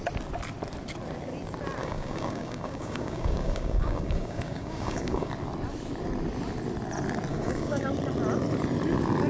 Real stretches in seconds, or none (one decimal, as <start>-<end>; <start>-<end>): 0.0-1.8; 5.3-7.3; 7.9-9.3